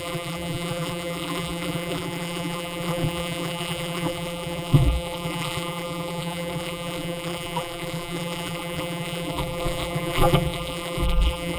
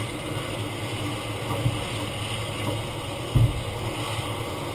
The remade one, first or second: first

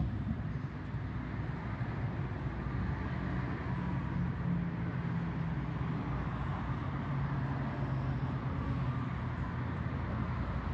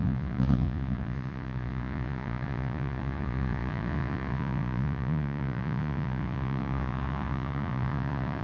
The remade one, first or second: second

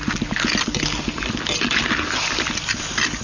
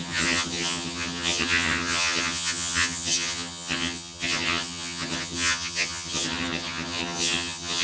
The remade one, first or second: second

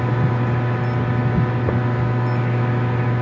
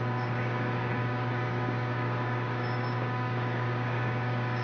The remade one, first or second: second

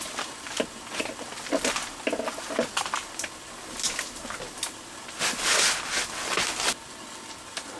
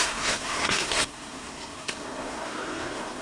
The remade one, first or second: second